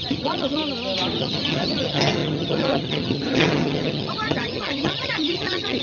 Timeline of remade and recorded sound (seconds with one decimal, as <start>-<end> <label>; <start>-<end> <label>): 0.0-0.6 remade; 0.6-1.2 recorded; 1.2-5.8 remade